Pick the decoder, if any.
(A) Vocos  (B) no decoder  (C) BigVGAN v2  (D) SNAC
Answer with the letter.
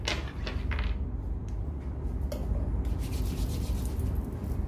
B